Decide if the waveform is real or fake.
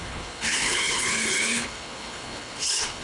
fake